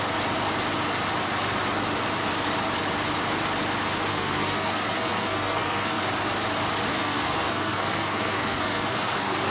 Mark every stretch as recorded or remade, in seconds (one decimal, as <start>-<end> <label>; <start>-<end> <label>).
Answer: 0.0-4.1 recorded; 4.1-6.0 remade; 6.0-6.9 recorded; 6.9-9.5 remade